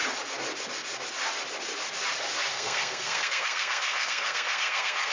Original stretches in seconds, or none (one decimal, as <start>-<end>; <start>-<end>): 0.0-2.5